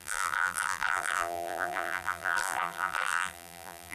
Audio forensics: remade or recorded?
remade